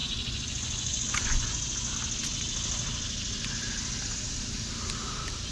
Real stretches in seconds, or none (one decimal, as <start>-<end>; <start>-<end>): 1.9-5.5